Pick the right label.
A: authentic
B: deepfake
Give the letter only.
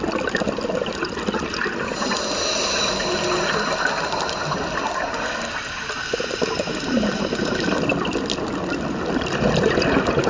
A